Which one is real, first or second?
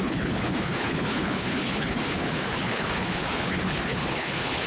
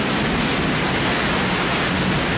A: second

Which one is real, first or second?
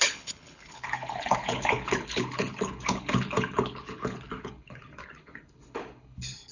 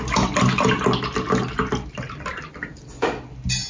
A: second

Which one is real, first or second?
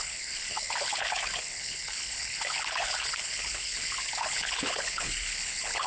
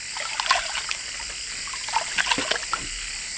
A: second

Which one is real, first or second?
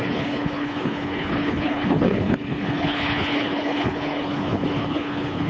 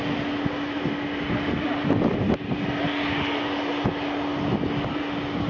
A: second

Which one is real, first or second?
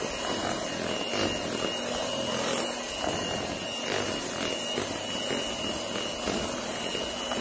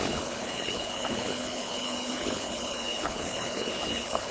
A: first